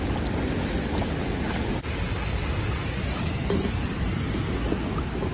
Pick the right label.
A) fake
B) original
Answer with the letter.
B